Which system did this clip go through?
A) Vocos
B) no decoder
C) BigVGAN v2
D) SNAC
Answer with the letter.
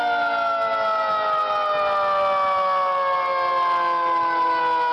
B